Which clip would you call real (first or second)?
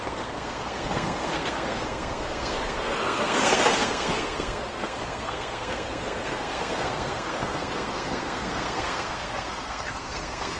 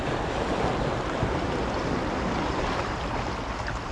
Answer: second